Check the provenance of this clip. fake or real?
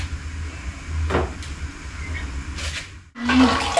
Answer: real